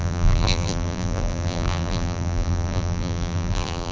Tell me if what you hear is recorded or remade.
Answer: remade